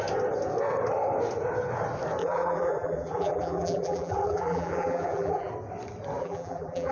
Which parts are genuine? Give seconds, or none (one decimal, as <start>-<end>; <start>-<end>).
0.0-2.2; 5.5-6.2